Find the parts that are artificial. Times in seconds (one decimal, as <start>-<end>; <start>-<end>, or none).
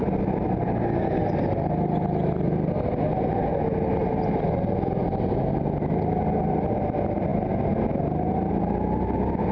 none